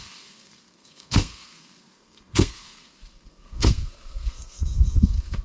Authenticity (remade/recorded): remade